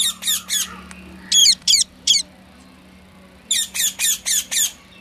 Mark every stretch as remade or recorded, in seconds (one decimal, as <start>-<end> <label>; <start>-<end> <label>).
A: 0.0-1.4 recorded; 1.4-2.2 remade; 2.2-5.0 recorded